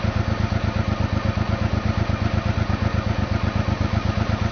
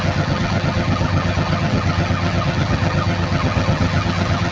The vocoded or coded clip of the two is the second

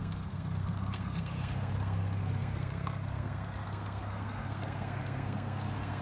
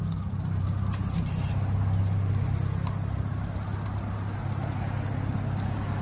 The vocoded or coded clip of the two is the first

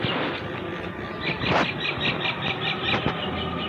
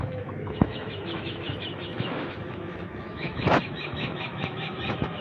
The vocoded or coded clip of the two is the second